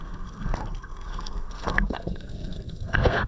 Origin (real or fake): fake